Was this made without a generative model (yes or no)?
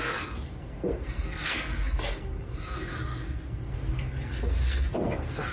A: no